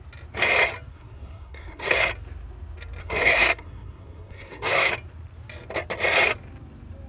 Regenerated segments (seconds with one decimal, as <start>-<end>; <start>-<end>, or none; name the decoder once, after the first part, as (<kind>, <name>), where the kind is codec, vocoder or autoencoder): 0.9-2.1 (codec, SNAC); 3.0-4.9